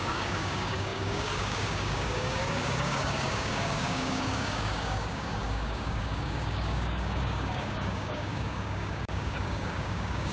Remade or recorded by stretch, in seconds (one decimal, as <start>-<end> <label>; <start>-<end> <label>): 0.0-10.3 remade